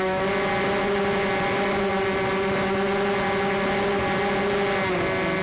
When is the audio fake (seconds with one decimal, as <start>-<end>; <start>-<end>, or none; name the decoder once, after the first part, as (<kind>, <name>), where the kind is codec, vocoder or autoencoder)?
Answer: none